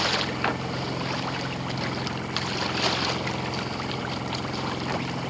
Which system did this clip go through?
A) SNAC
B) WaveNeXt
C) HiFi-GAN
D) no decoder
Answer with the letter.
D